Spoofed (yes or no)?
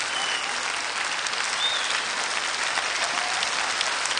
no